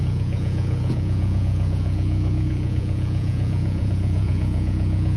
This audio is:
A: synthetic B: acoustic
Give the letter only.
A